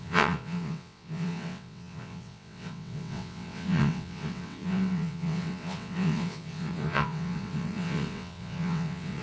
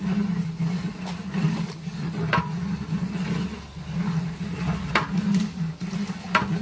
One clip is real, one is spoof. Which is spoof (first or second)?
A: first